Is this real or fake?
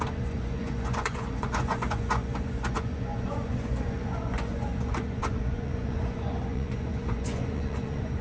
fake